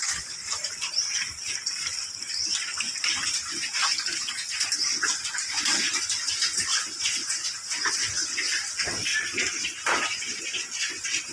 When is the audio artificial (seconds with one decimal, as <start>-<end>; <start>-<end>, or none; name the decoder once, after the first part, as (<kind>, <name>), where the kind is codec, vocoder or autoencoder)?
none